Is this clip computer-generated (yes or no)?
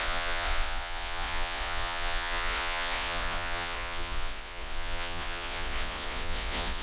yes